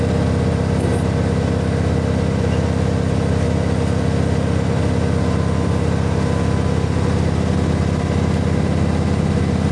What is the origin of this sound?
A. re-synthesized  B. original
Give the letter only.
B